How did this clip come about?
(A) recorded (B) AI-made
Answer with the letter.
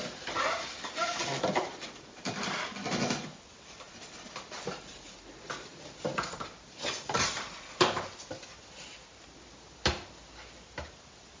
A